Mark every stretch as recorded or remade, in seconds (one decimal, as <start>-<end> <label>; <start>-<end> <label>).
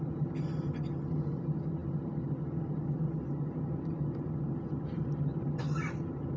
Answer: 0.0-6.4 recorded